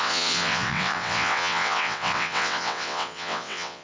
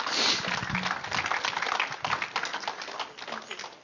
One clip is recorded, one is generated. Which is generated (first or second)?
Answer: first